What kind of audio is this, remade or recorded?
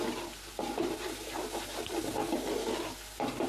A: recorded